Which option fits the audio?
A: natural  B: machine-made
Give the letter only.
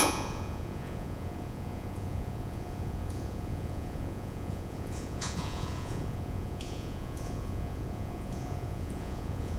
B